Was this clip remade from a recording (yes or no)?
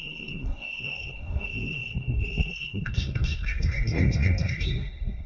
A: yes